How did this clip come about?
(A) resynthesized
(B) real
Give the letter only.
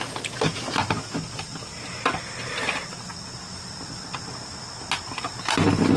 B